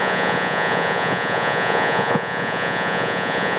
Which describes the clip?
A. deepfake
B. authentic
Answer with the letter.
A